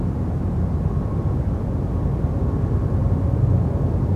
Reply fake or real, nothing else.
fake